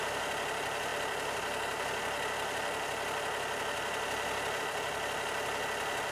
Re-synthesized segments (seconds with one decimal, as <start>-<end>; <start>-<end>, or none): none